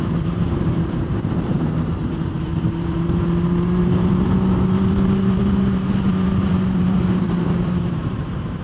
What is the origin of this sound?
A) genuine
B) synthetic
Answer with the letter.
B